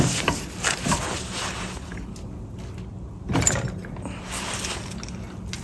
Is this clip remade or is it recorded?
recorded